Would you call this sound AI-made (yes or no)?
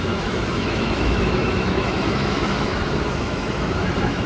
yes